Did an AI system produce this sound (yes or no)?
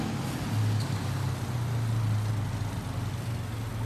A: no